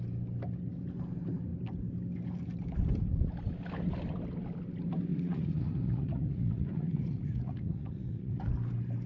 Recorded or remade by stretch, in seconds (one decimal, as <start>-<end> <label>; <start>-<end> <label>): 0.0-5.1 recorded; 5.1-8.5 remade; 8.5-9.1 recorded

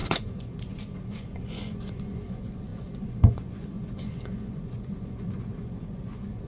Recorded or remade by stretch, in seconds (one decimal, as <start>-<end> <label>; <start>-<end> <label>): 0.0-6.5 remade

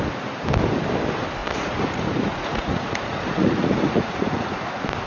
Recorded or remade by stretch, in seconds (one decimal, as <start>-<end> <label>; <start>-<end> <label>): 0.0-1.4 recorded; 1.4-4.5 remade; 4.5-5.1 recorded

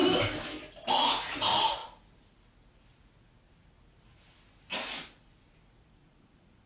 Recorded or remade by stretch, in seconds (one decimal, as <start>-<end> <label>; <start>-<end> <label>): 0.0-0.9 recorded; 0.9-1.8 remade; 1.8-5.8 recorded; 5.8-6.7 remade

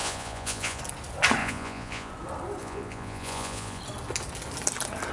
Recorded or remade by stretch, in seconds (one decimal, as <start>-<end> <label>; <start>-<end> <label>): 0.0-0.8 remade; 0.8-1.4 recorded; 1.4-2.1 remade; 2.1-2.6 recorded; 2.6-3.8 remade; 3.8-5.1 recorded

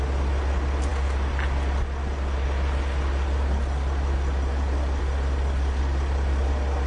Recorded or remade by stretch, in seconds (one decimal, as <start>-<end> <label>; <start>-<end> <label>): 0.0-6.9 recorded

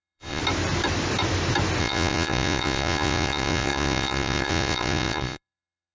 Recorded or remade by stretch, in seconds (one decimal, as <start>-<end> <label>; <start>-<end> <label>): 0.0-0.4 remade; 0.4-1.8 recorded; 1.8-5.9 remade